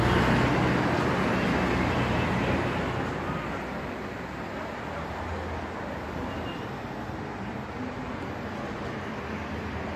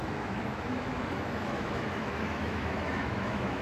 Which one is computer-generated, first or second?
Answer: second